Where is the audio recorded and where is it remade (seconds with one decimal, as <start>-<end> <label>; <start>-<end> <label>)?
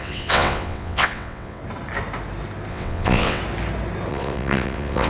0.0-1.6 remade; 1.6-2.7 recorded; 2.7-3.4 remade; 3.4-4.1 recorded; 4.1-5.1 remade